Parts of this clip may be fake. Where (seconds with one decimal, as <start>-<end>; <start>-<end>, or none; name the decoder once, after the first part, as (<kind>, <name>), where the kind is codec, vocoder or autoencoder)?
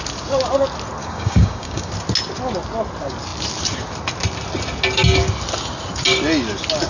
1.0-1.9 (codec, DAC)